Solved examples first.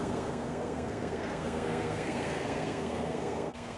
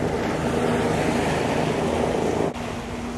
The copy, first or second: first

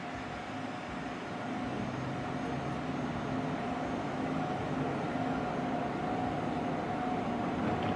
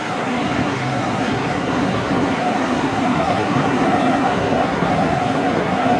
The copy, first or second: second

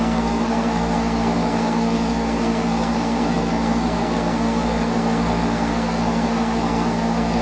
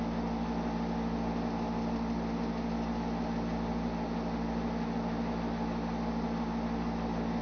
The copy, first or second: first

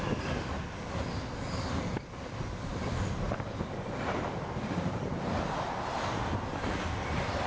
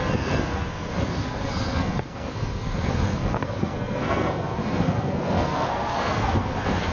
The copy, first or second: second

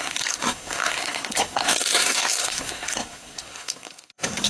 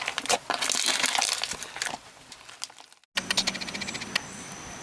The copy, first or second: first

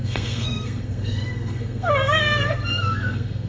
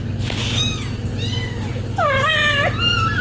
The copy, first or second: first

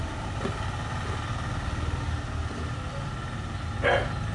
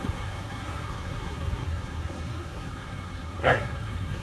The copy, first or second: second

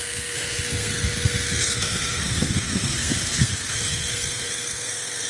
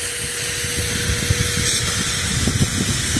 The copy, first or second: first